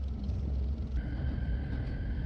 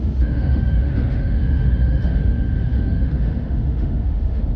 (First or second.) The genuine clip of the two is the first